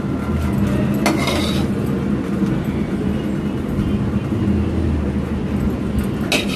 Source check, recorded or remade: recorded